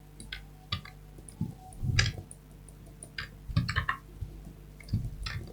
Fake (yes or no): no